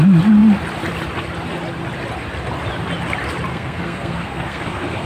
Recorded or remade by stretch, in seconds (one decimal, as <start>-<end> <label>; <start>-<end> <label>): 0.0-3.5 recorded; 3.5-5.1 remade